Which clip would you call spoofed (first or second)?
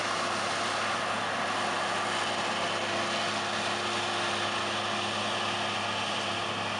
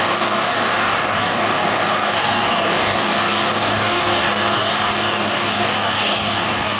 second